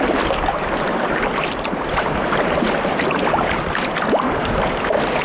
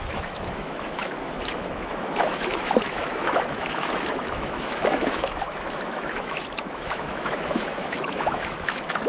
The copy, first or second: second